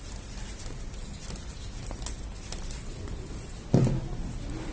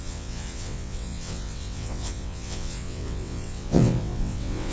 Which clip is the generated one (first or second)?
second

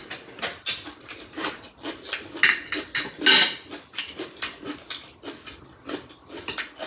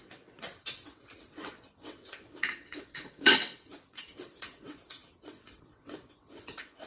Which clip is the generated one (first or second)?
second